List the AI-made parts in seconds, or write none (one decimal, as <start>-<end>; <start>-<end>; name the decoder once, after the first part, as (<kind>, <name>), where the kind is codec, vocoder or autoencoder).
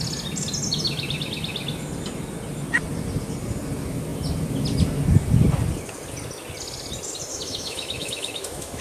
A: 7.3-8.8 (autoencoder, DAC-VAE)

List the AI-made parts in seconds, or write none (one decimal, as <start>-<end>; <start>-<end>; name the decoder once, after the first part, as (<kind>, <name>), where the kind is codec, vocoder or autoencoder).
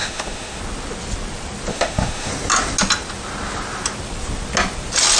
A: 0.0-0.6 (autoencoder, DAC-VAE); 1.7-2.3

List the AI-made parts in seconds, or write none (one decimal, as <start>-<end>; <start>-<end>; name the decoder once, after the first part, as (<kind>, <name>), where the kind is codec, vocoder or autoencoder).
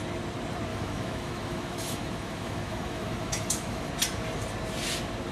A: 0.7-3.9 (autoencoder, DAC-VAE)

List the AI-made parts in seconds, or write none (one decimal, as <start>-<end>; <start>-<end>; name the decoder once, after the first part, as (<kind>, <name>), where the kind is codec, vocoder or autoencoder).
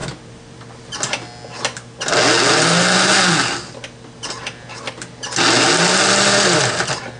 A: none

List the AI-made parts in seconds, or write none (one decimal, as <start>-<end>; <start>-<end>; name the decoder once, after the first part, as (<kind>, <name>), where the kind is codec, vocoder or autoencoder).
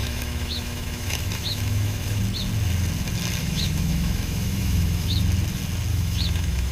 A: 0.0-2.2 (autoencoder, DAC-VAE); 3.4-5.2; 5.9-6.7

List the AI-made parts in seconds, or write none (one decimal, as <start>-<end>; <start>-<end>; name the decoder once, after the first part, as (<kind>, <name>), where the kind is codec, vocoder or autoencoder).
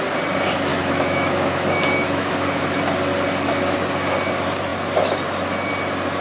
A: 0.7-2.8 (autoencoder, DAC-VAE)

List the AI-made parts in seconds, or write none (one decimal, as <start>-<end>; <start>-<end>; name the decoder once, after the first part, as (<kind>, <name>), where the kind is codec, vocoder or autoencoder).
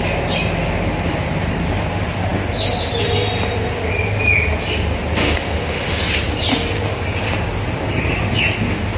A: 5.2-6.0 (autoencoder, DAC-VAE)